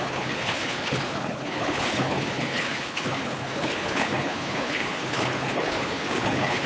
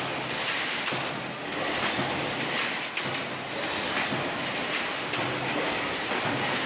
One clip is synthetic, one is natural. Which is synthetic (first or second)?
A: first